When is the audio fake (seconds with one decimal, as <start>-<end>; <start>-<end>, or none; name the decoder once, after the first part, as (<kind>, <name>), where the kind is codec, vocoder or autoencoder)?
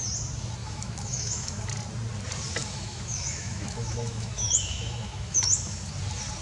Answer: 0.6-1.7 (autoencoder, DAC-VAE); 2.6-5.9